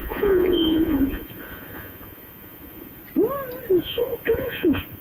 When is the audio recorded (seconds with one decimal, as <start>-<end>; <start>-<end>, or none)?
3.0-3.8